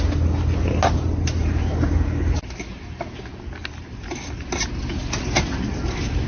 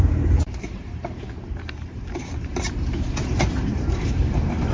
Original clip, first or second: first